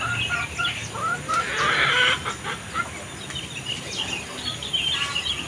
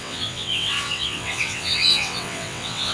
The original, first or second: first